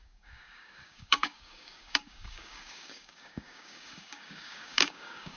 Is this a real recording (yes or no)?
no